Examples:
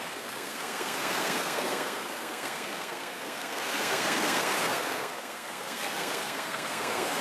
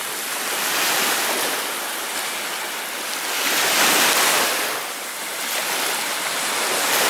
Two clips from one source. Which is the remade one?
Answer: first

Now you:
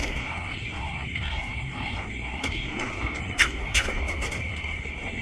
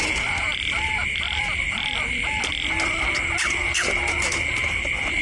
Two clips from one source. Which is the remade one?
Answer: first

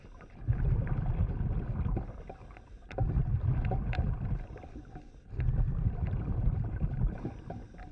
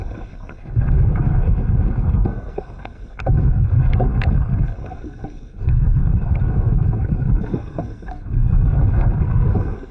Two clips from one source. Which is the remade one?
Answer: second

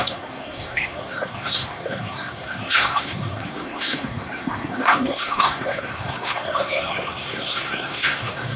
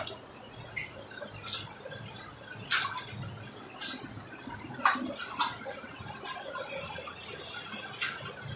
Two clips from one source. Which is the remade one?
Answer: first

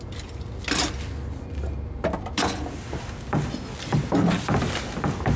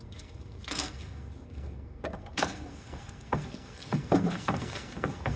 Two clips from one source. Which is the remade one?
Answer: second